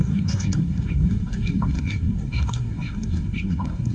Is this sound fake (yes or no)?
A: yes